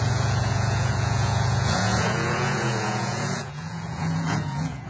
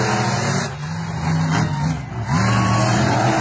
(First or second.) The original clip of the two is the second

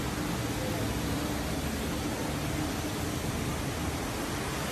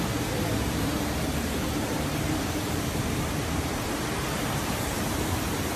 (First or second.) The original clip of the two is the first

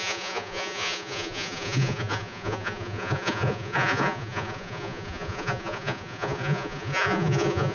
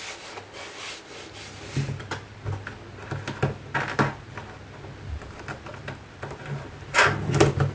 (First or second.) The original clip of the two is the second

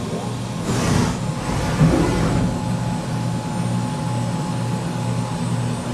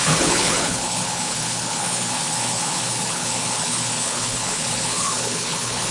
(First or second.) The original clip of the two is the first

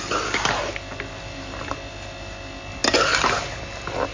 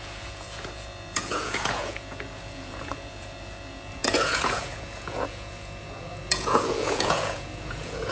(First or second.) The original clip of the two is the first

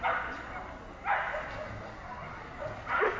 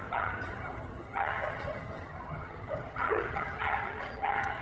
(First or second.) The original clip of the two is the first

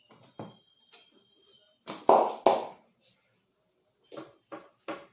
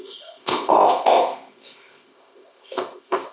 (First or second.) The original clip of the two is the first